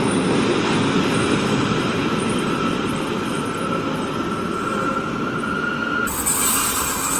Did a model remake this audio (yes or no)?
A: no